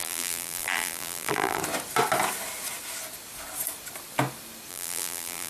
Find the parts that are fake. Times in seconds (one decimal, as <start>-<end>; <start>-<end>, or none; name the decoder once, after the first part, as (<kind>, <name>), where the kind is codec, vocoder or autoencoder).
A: 0.0-1.6 (vocoder, BigVGAN v2); 4.7-5.5